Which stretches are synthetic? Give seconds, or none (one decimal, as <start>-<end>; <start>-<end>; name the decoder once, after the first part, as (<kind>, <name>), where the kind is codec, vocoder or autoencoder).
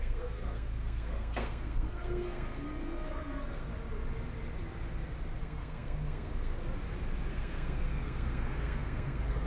0.0-3.7 (codec, SNAC); 5.4-6.5; 7.3-9.5